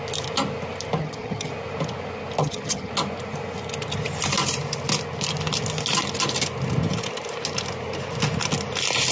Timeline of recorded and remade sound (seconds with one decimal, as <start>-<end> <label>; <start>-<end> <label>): 0.0-1.0 recorded; 1.0-1.5 remade; 1.5-2.4 recorded; 2.4-2.9 remade; 2.9-9.1 recorded